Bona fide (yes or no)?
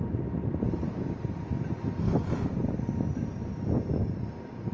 yes